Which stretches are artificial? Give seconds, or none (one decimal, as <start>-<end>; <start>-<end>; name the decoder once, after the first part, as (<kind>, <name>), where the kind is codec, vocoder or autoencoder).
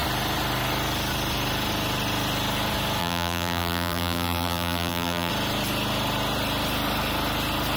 3.0-5.3 (vocoder, BigVGAN v2)